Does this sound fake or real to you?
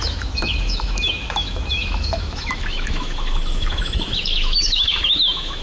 fake